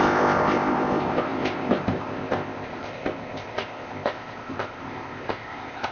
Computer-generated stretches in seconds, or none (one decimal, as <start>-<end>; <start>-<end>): 0.0-5.9

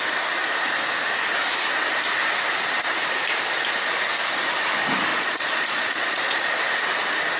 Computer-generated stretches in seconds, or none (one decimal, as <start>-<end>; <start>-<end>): 5.1-6.6

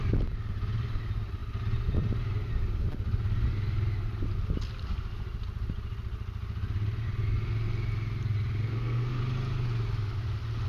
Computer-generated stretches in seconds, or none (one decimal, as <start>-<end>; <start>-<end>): 8.6-9.2

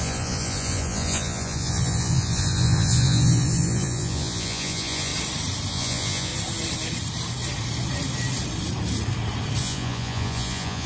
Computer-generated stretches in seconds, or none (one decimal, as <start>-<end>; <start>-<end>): 0.0-5.1; 5.7-6.3; 9.6-10.9

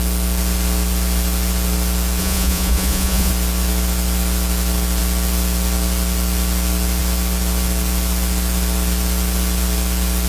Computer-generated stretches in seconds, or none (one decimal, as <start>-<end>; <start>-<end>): 2.2-3.3